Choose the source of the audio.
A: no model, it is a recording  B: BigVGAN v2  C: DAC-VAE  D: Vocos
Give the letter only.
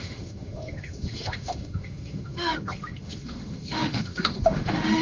C